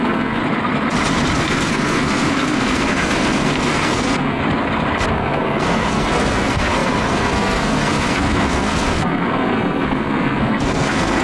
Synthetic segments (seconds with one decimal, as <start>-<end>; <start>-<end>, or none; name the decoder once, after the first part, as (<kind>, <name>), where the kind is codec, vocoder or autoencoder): 0.0-0.4 (codec, SNAC); 1.4-4.4; 5.1-11.2

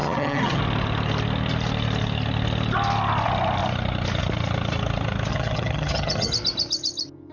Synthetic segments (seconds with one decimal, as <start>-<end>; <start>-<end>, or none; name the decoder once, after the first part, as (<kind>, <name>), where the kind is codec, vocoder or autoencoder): 0.0-0.6 (vocoder, HiFi-GAN); 5.3-6.3

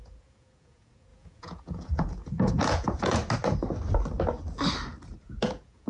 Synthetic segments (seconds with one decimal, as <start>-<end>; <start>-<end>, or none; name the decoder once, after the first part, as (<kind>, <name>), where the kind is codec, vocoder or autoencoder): 0.0-3.2 (vocoder, Vocos); 5.2-5.9